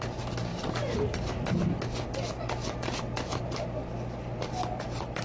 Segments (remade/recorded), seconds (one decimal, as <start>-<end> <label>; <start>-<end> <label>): 0.0-0.5 recorded; 0.5-1.3 remade; 1.3-2.6 recorded; 2.6-3.6 remade; 3.6-5.2 recorded